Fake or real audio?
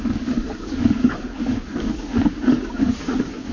fake